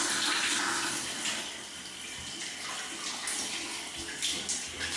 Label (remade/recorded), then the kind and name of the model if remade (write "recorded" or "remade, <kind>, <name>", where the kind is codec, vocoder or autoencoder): recorded